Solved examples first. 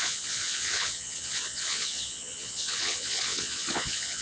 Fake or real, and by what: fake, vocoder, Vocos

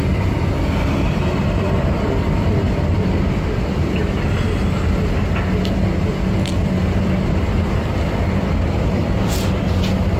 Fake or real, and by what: real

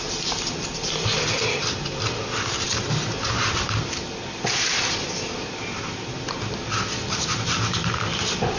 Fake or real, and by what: fake, vocoder, BigVGAN v2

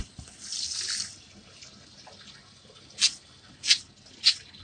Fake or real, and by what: real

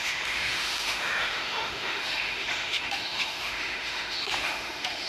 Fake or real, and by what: fake, autoencoder, DAC-VAE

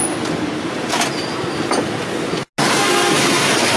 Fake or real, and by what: real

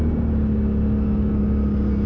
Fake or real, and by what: real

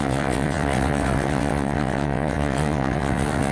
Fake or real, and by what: fake, vocoder, WaveNeXt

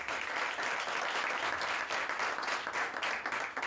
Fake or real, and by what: real